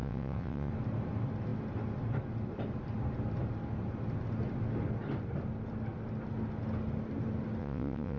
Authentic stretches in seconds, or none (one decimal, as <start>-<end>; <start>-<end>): 0.7-7.6